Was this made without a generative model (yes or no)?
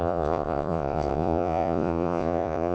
no